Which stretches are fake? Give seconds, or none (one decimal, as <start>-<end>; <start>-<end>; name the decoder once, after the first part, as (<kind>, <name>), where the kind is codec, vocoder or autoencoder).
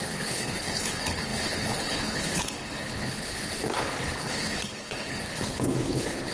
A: 0.0-6.3 (codec, HILCodec)